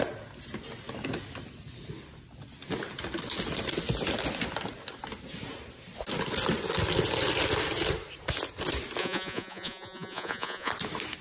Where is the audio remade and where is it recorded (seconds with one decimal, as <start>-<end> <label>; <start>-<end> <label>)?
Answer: 0.0-9.0 recorded; 9.0-10.7 remade; 10.7-11.2 recorded